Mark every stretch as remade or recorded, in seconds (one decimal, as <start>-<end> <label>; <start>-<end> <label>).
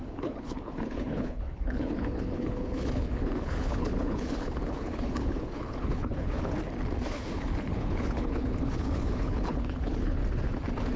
0.0-6.6 remade; 6.6-7.1 recorded; 7.1-10.2 remade; 10.2-11.0 recorded